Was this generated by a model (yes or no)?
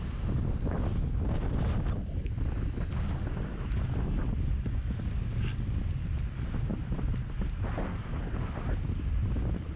no